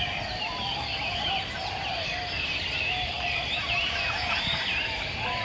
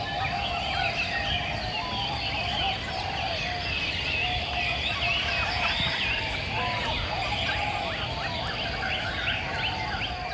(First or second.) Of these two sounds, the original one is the second